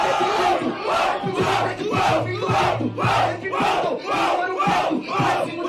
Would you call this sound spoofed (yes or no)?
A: no